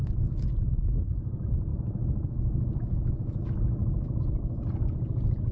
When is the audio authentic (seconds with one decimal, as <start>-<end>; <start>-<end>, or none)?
0.5-1.7; 4.2-5.5